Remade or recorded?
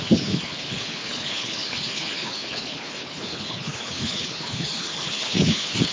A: remade